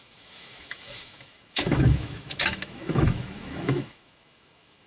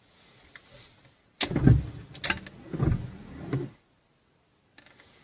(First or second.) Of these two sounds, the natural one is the second